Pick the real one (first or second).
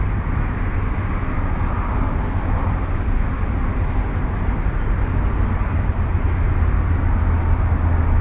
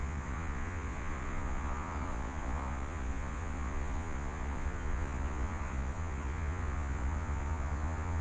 first